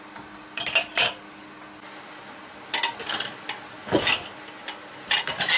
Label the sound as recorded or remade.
recorded